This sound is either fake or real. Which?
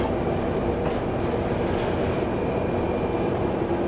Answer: real